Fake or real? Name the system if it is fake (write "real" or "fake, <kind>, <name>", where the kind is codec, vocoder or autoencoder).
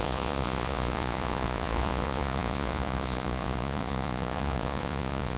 fake, vocoder, Vocos